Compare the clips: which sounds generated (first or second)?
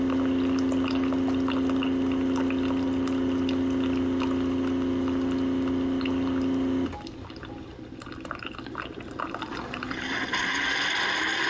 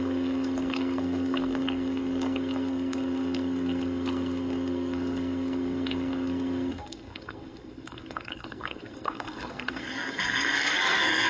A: second